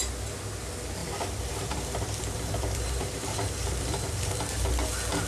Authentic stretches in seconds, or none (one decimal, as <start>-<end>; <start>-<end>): 0.0-1.0; 4.2-5.3